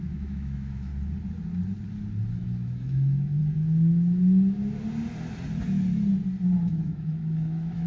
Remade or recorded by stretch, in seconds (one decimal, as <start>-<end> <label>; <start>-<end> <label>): 0.0-0.9 remade; 0.9-2.3 recorded; 2.3-3.4 remade; 3.4-6.6 recorded; 6.6-7.9 remade